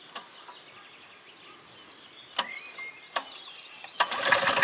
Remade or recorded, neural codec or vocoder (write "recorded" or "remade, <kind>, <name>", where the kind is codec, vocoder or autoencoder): recorded